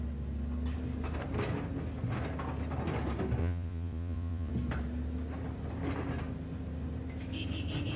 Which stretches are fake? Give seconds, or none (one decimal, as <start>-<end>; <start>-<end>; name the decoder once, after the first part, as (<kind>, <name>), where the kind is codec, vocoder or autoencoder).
3.4-4.5 (vocoder, Vocos)